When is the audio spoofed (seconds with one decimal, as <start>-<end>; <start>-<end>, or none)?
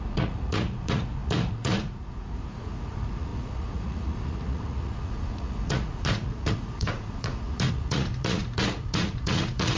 0.0-9.8